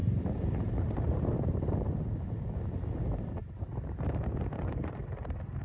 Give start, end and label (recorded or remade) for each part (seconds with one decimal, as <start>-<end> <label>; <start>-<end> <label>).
0.0-1.9 remade; 1.9-3.4 recorded; 3.4-5.6 remade